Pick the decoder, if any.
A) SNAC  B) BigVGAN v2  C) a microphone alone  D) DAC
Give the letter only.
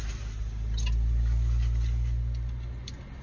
C